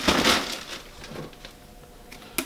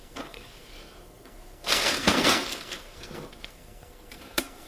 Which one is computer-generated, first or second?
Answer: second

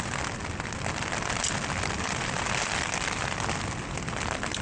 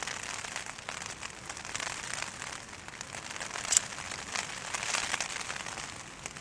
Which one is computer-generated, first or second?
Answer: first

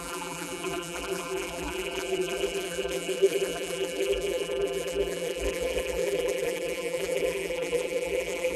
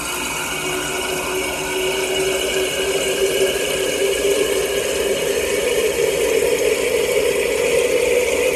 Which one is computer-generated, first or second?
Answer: first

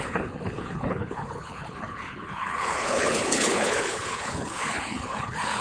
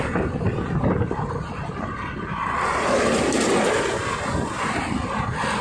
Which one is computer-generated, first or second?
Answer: first